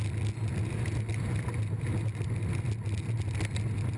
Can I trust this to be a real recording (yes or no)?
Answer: yes